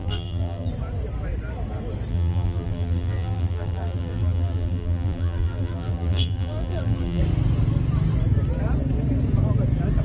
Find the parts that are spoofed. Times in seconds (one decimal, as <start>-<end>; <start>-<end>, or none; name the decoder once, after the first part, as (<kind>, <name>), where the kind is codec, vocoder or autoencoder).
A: 0.0-0.7 (vocoder, BigVGAN v2); 2.1-7.2